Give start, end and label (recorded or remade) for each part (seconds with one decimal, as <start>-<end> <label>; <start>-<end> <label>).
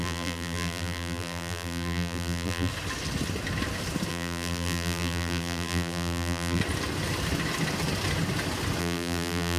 0.0-2.7 remade; 2.7-4.1 recorded; 4.1-6.6 remade; 6.6-8.8 recorded; 8.8-9.6 remade